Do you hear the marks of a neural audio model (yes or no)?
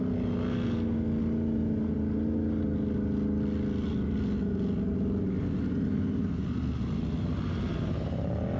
no